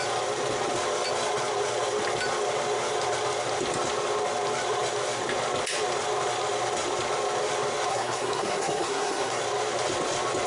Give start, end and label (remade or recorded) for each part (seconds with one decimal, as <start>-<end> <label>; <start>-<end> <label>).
0.0-7.9 recorded; 7.9-9.4 remade; 9.4-10.5 recorded